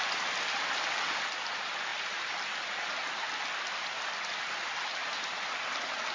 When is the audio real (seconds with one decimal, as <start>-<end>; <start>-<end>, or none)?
0.0-6.1

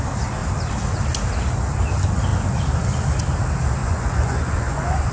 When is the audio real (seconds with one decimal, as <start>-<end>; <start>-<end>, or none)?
0.0-3.8